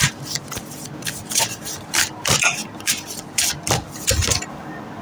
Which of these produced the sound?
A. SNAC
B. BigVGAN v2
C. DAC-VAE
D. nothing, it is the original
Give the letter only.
D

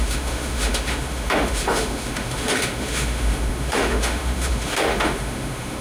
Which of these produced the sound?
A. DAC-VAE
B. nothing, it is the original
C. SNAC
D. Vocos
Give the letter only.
A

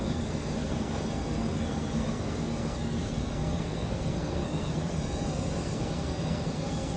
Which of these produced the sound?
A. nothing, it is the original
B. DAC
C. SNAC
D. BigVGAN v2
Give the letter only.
C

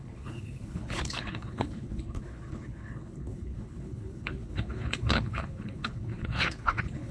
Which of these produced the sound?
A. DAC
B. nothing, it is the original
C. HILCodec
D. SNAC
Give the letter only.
C